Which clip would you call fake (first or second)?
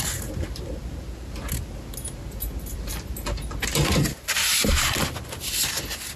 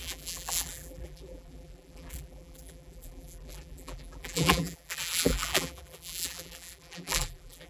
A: second